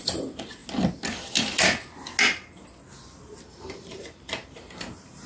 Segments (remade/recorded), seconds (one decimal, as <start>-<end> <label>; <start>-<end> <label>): 0.0-0.6 remade; 0.6-3.2 recorded; 3.2-5.3 remade